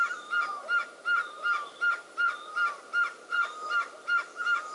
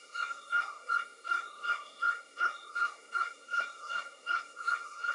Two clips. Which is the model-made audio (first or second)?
second